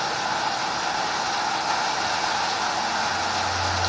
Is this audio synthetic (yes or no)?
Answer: no